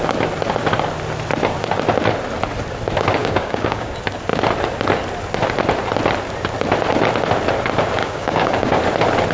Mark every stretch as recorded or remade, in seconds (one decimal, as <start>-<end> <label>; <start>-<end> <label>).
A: 0.0-3.2 recorded; 3.2-3.9 remade; 3.9-8.0 recorded; 8.0-8.8 remade; 8.8-9.3 recorded